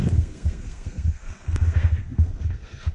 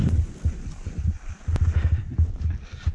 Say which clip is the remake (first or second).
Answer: first